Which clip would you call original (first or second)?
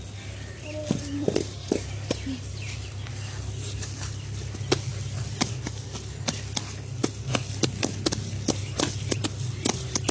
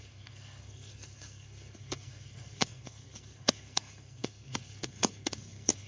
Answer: first